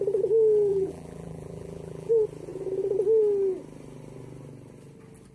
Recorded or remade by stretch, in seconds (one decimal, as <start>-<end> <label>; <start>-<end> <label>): 0.0-0.7 recorded; 0.7-2.1 remade; 2.1-5.3 recorded